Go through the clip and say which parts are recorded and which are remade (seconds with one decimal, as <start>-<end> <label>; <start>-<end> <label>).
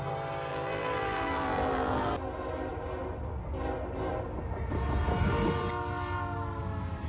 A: 0.0-0.5 recorded; 0.5-2.1 remade; 2.1-7.1 recorded